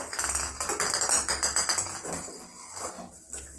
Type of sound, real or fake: real